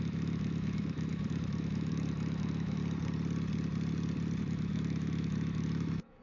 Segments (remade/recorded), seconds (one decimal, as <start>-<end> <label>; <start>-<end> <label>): 0.0-2.8 remade; 2.8-4.4 recorded; 4.4-6.2 remade